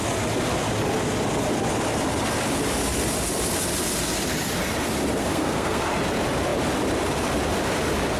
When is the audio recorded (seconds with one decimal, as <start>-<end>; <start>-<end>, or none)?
0.0-5.2; 5.9-8.2